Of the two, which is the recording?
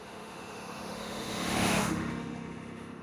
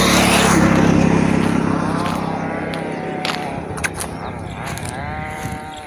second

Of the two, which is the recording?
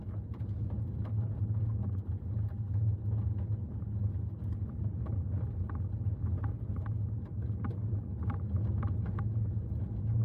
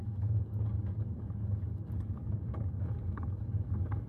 first